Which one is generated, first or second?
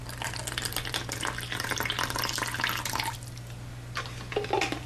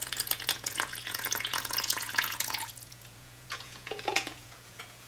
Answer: second